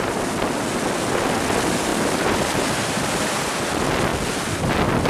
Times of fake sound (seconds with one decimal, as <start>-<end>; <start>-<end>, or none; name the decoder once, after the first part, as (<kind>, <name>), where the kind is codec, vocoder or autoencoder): 1.9-3.5 (vocoder, BigVGAN v2)

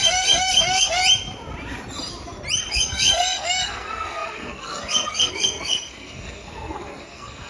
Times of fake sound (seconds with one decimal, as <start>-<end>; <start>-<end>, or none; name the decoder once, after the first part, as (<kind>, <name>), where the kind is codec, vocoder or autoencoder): 0.0-1.0 (codec, SNAC); 2.7-7.5

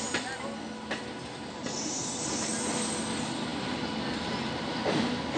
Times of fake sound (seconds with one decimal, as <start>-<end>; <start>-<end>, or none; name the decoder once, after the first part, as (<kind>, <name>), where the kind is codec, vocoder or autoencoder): none

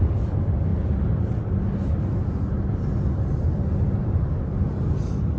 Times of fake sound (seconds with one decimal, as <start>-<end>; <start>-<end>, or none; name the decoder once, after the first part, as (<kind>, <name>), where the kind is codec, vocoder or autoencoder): none

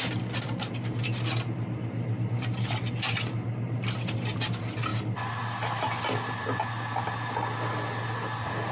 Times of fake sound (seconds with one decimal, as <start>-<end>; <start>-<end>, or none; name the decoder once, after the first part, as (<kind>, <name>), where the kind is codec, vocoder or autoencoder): none

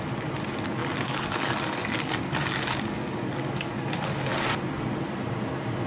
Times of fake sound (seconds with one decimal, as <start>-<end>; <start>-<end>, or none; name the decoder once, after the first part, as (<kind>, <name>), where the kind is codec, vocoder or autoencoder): 0.8-3.9 (codec, DAC)